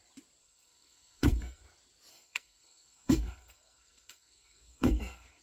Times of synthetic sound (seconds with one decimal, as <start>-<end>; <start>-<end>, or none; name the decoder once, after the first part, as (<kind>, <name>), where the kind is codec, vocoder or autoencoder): 0.4-1.6 (codec, SNAC); 2.1-5.4